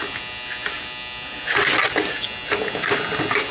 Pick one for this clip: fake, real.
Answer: real